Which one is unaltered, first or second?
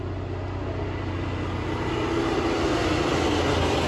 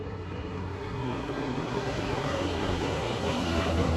first